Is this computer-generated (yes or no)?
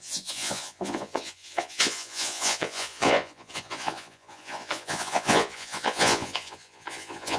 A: yes